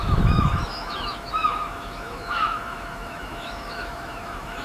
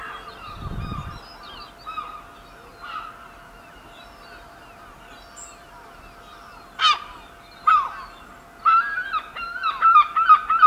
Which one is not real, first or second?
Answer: first